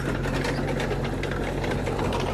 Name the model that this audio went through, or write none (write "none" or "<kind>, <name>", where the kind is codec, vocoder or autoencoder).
none